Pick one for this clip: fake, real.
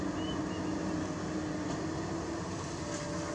real